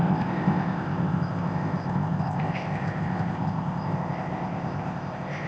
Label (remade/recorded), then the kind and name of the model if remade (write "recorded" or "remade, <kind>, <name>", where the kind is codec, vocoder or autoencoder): remade, codec, ZipCodec